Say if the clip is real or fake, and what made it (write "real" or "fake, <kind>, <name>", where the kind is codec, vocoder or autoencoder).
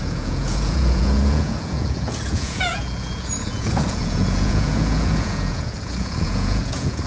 fake, vocoder, Vocos